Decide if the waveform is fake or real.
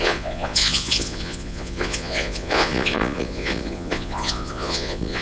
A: fake